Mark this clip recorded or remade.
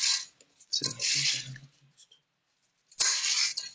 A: recorded